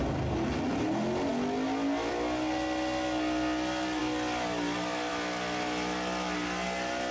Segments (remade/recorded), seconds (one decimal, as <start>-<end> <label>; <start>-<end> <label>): 0.0-7.1 recorded